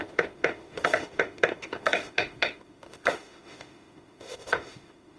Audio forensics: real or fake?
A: fake